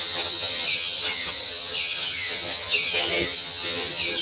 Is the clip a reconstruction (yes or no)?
yes